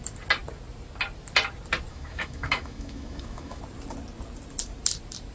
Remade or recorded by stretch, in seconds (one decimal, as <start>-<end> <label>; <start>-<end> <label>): 0.0-1.9 recorded; 1.9-3.6 remade; 3.6-5.3 recorded